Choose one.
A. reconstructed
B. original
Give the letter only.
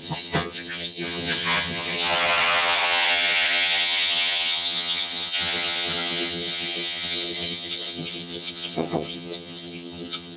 A